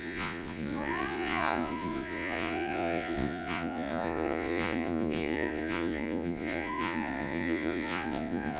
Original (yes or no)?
no